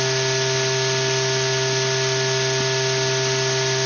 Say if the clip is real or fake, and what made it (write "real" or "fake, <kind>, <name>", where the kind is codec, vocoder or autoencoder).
real